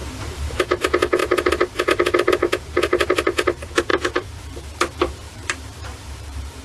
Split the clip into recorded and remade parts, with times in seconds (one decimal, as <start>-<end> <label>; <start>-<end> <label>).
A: 0.0-6.6 remade